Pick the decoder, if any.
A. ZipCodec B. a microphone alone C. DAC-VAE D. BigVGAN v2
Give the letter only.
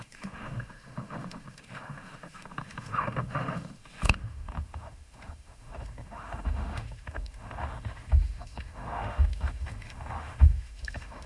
C